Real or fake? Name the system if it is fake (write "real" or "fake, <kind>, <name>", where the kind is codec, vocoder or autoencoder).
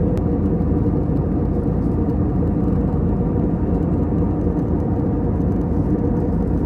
real